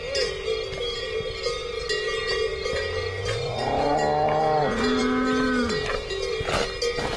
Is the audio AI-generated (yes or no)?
no